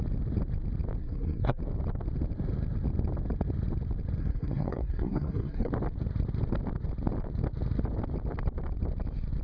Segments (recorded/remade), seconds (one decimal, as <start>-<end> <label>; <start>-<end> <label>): 0.0-1.0 recorded; 1.0-1.6 remade; 1.6-4.2 recorded; 4.2-5.7 remade; 5.7-9.4 recorded